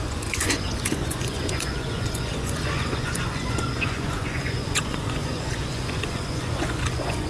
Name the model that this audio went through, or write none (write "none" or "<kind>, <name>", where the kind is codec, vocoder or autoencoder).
vocoder, Vocos